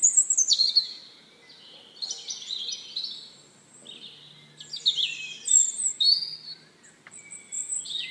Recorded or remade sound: recorded